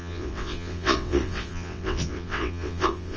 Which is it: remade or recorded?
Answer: remade